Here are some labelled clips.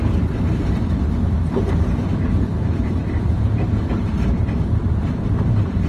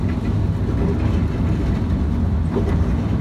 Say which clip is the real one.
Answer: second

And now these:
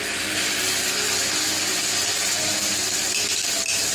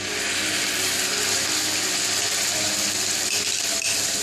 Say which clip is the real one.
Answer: first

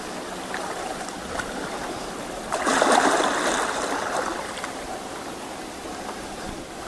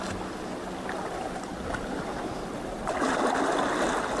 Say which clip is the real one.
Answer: second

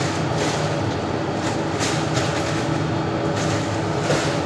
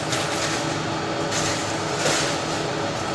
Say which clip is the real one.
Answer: first